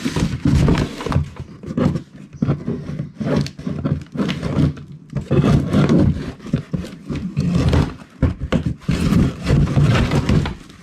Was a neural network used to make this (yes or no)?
no